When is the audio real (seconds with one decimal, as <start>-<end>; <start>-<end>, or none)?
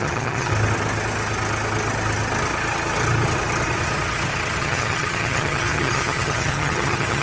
0.5-4.6